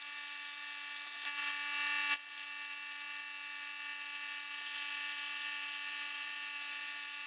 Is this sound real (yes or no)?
yes